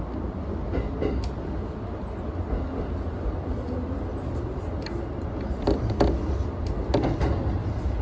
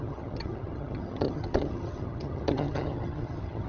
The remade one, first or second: second